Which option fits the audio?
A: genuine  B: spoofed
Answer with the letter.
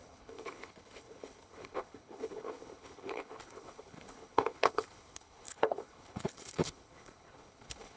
B